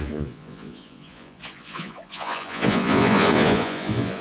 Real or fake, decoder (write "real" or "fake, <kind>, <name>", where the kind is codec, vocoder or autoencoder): fake, vocoder, Vocos